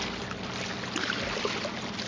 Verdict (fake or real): real